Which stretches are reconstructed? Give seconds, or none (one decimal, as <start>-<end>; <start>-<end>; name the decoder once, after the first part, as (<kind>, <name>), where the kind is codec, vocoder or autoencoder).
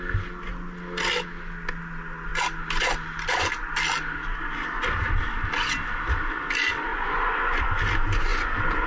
6.9-7.6 (vocoder, Vocos); 8.3-8.9